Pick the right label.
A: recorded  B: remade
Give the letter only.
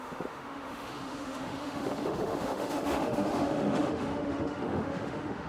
B